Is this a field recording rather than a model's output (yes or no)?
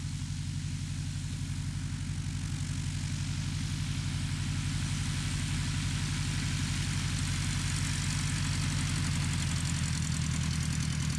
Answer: yes